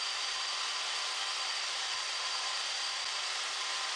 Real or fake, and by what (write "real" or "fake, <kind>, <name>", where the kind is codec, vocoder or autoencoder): fake, vocoder, BigVGAN v2